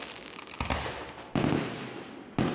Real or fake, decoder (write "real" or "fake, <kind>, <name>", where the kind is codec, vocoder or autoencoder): real